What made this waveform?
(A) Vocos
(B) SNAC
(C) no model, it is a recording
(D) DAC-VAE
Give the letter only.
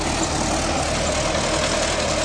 C